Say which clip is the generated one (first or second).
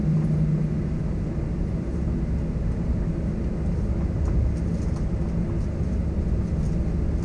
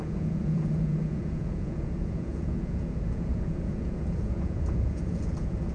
second